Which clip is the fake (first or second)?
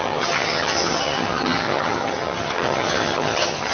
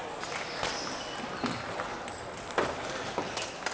first